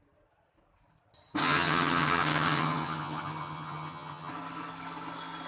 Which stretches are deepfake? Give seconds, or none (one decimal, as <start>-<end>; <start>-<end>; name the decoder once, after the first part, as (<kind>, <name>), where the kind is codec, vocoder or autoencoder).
1.4-4.3 (vocoder, HiFi-GAN)